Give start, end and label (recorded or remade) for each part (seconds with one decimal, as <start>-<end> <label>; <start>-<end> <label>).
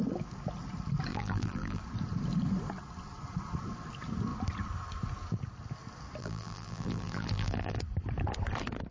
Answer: 0.0-1.1 recorded; 1.1-1.8 remade; 1.8-6.2 recorded; 6.2-7.8 remade; 7.8-8.9 recorded